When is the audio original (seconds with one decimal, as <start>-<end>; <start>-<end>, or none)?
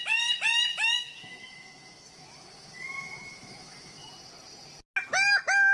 0.0-0.7; 4.1-5.7